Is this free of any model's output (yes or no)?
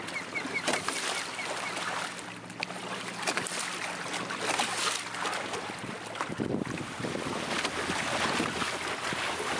yes